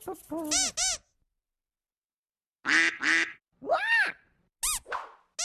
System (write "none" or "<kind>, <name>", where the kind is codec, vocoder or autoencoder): none